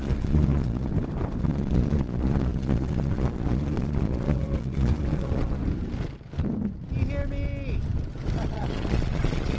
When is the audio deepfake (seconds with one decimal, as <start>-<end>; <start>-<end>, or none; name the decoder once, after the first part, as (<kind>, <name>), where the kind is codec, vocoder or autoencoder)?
0.0-0.9 (vocoder, Vocos); 1.4-5.6; 8.5-9.6